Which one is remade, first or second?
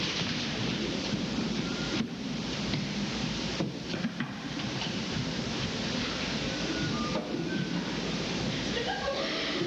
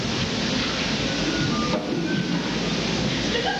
first